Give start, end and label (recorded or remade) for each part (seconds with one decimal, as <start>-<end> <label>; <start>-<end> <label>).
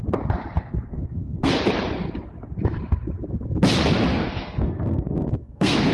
0.0-0.9 recorded; 0.9-1.5 remade; 1.5-4.1 recorded; 4.1-5.9 remade